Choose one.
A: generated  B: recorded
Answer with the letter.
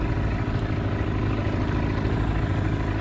B